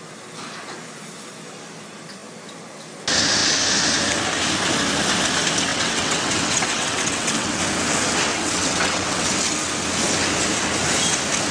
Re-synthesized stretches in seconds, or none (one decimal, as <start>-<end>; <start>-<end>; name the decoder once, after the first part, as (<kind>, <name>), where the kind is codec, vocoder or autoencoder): 5.7-7.6 (vocoder, WaveNeXt); 8.3-9.3